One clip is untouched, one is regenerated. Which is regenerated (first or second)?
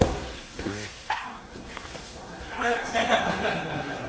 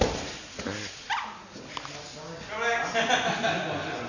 first